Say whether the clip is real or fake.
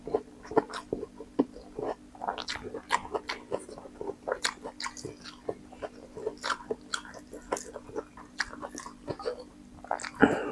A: real